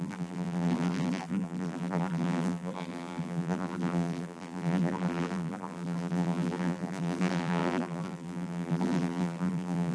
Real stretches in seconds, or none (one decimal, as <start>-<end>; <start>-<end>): none